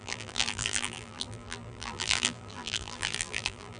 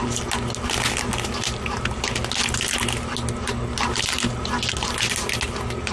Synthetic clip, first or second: first